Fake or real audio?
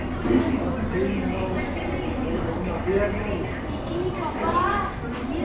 real